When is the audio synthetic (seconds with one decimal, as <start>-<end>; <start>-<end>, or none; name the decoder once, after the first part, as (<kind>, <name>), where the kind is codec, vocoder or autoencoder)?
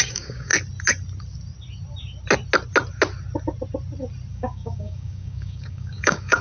0.0-0.5 (codec, DAC); 4.3-6.4